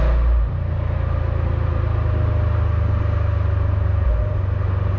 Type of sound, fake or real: real